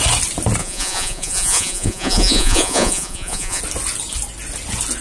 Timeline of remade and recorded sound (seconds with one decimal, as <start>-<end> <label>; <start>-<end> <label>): 0.0-0.6 recorded; 0.6-3.6 remade; 3.6-5.0 recorded